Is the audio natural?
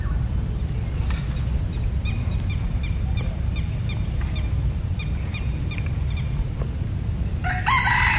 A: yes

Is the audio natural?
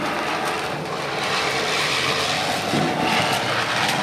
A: yes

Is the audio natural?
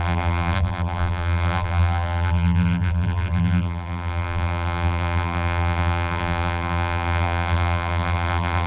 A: no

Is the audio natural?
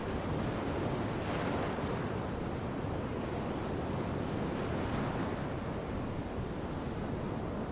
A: yes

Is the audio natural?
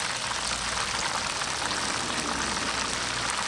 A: yes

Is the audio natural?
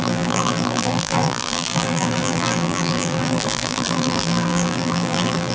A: no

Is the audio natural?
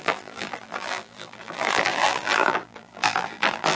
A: no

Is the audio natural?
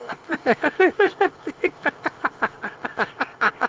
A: no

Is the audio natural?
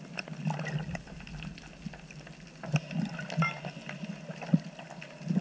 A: yes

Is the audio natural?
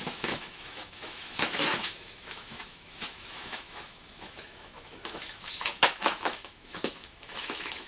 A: no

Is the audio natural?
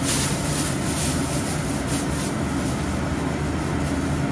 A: yes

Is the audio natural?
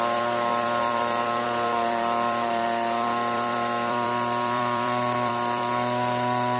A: no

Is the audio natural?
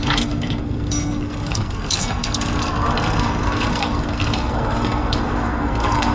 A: no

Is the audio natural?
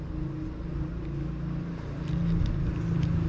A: yes